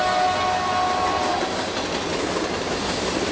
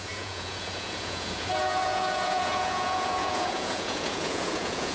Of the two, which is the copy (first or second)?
second